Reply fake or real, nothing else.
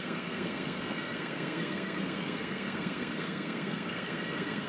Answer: fake